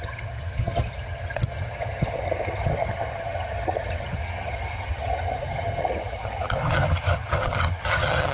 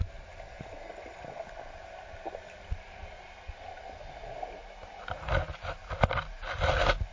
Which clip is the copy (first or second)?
first